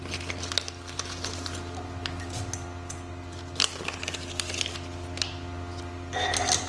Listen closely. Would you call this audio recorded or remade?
recorded